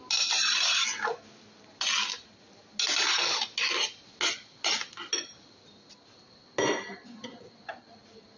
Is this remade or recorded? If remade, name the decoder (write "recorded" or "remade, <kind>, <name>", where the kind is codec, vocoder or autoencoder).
recorded